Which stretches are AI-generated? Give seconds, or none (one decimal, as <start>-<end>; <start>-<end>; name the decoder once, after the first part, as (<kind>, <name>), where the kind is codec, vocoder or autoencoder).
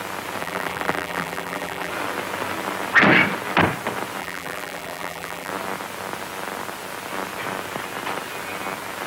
0.4-1.9 (vocoder, BigVGAN v2); 4.2-5.5